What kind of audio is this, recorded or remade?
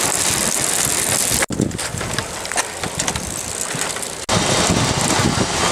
recorded